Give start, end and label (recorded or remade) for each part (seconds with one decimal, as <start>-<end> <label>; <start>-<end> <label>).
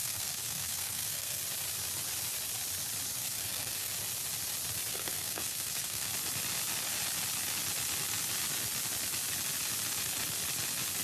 0.0-1.4 remade; 1.4-3.2 recorded; 3.2-3.9 remade; 3.9-4.9 recorded; 4.9-6.1 remade; 6.1-11.0 recorded